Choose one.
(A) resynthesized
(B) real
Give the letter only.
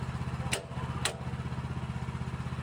B